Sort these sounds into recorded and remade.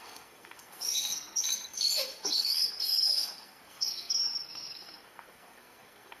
remade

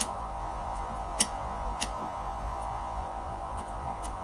remade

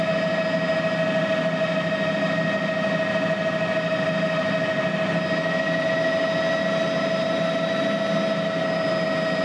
recorded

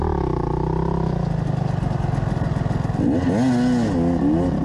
recorded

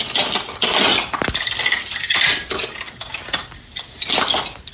recorded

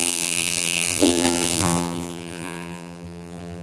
remade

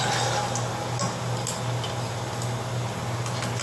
recorded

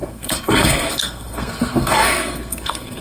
remade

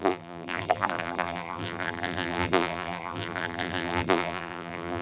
remade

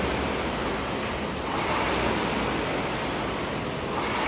recorded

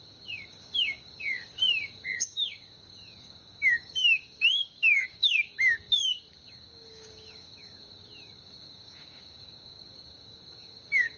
remade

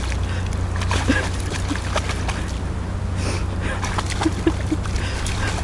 recorded